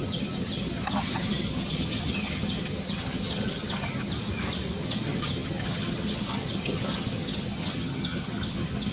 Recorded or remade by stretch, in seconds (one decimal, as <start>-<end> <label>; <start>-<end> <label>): 0.0-4.1 remade; 4.1-4.8 recorded; 4.8-8.9 remade